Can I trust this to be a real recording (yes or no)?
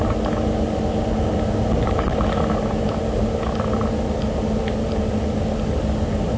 yes